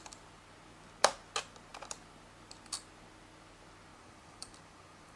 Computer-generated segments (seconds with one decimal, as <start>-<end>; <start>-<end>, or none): 3.9-5.2